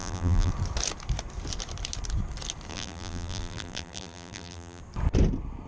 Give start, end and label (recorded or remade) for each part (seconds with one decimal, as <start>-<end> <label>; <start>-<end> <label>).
0.0-0.5 remade; 0.5-2.7 recorded; 2.7-4.8 remade; 4.8-5.7 recorded